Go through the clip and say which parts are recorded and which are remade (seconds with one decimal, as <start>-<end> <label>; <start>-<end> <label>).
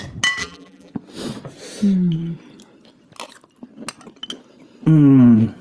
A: 0.0-0.4 recorded; 0.4-0.9 remade; 0.9-5.6 recorded